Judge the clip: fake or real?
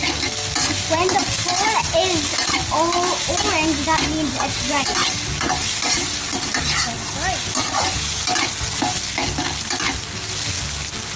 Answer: real